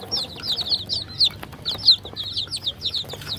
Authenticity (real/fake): real